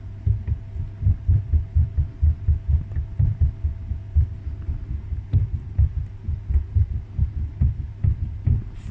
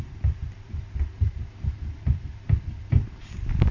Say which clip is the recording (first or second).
first